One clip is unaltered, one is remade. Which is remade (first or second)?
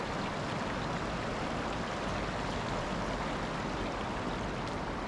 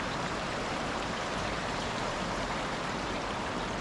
second